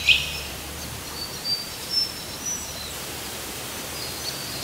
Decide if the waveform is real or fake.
fake